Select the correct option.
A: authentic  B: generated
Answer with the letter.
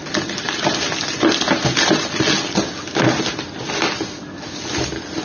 A